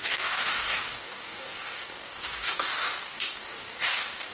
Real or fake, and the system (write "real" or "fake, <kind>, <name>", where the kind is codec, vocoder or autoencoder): fake, codec, DAC